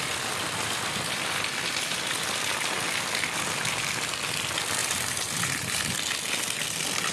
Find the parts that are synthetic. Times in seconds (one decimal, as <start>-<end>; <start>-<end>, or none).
4.8-5.8